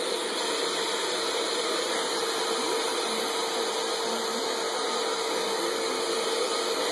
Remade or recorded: recorded